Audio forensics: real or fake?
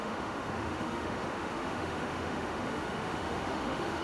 fake